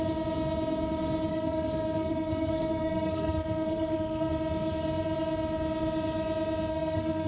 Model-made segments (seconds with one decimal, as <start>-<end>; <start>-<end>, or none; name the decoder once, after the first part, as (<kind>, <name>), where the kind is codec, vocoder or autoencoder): 1.3-4.3 (codec, SNAC); 6.7-7.3